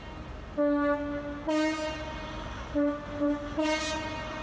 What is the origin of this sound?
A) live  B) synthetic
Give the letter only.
A